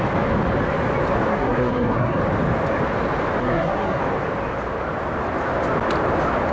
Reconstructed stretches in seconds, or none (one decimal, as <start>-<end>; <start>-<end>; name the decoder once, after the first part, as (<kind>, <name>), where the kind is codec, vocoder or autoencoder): 1.3-2.2 (codec, SNAC); 3.4-4.0